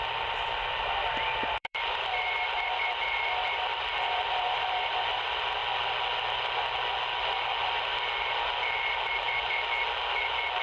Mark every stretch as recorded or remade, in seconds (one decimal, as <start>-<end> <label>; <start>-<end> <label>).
0.0-5.6 remade; 5.6-8.6 recorded; 8.6-10.6 remade